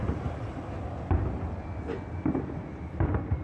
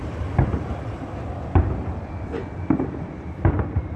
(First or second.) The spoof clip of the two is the second